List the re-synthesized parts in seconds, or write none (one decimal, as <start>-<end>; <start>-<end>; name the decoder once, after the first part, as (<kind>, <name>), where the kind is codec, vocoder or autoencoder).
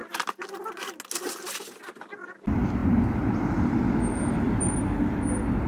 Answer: none